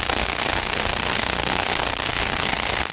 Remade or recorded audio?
remade